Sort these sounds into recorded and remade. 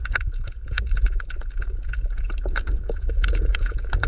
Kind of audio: remade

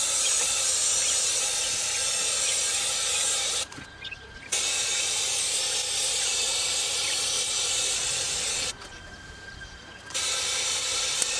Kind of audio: recorded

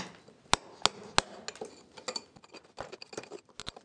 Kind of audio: recorded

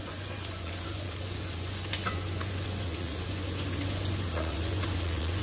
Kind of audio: remade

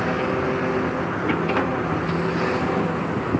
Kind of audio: recorded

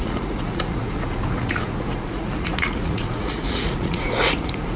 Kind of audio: remade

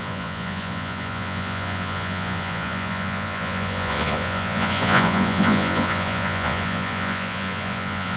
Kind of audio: remade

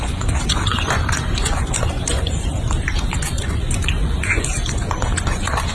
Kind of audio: remade